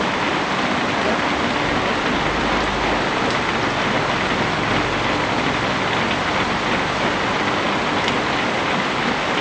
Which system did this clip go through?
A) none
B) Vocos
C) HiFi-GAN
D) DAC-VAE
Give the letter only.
A